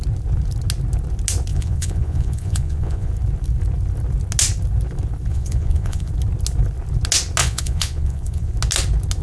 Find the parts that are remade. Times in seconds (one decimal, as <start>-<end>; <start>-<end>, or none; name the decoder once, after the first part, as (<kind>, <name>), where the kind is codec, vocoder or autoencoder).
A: 1.5-3.1 (vocoder, Vocos); 5.3-6.1; 7.4-8.5